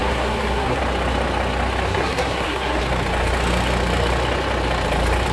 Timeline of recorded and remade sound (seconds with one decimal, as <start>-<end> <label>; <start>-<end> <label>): 0.0-0.8 remade; 0.8-1.9 recorded; 1.9-2.8 remade; 2.8-5.3 recorded